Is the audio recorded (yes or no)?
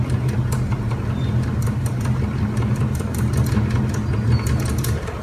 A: yes